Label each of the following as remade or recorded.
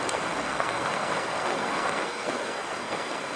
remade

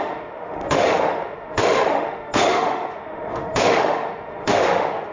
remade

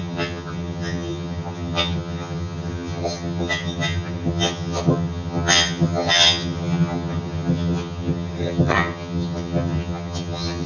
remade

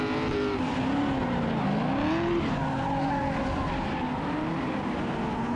recorded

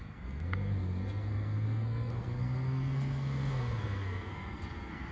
remade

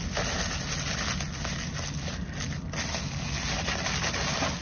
recorded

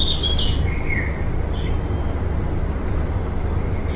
recorded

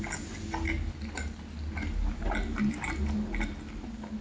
recorded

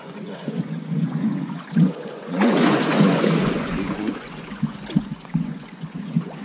remade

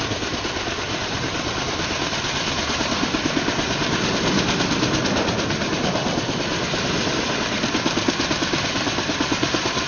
recorded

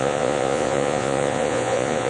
remade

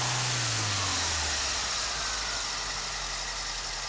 recorded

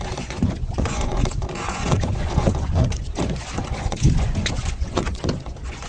remade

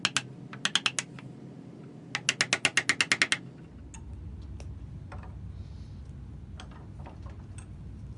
recorded